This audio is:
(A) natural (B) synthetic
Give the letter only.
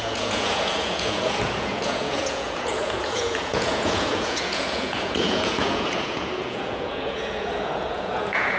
B